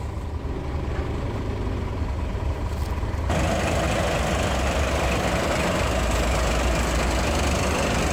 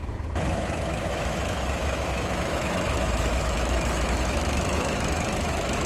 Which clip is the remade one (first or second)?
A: second